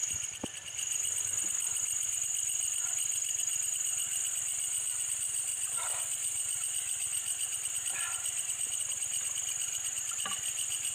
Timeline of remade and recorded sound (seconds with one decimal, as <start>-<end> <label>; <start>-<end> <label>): 0.0-10.9 recorded